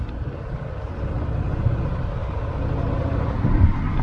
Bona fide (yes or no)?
yes